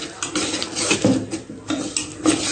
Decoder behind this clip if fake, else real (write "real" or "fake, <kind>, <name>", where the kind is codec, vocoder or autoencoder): real